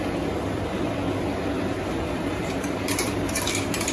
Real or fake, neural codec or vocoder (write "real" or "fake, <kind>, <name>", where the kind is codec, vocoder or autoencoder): fake, vocoder, BigVGAN v2